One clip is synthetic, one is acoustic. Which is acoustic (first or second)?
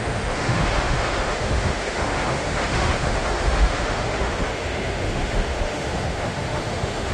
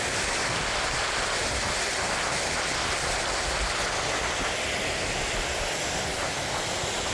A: second